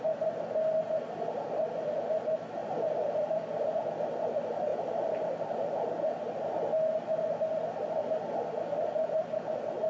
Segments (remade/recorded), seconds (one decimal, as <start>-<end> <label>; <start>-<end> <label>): 0.0-2.6 recorded; 2.6-3.2 remade; 3.2-4.7 recorded; 4.7-5.8 remade; 5.8-9.9 recorded